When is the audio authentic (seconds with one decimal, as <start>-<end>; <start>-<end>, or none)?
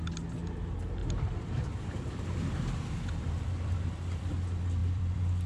0.0-1.0; 4.3-4.8